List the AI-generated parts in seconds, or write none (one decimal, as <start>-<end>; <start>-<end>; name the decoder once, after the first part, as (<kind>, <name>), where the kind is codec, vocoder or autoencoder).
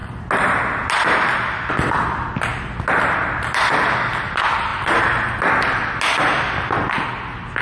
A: none